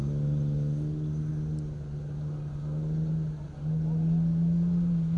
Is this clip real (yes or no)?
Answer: yes